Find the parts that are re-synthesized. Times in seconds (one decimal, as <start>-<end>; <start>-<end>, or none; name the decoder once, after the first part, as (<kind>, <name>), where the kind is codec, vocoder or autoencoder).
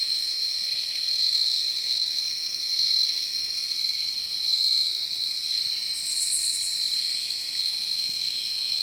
0.0-5.6 (codec, SNAC); 7.0-8.8